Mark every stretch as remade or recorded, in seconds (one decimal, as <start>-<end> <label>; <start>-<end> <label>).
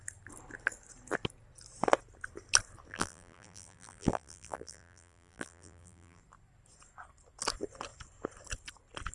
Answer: 0.0-2.9 recorded; 2.9-6.2 remade; 6.2-9.1 recorded